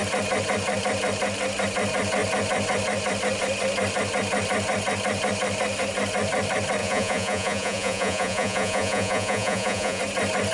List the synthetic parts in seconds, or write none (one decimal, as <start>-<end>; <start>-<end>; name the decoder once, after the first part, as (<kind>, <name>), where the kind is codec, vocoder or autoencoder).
6.8-10.0 (vocoder, Vocos)